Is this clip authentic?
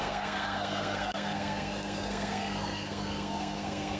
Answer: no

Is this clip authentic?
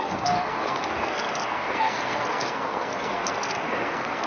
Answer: no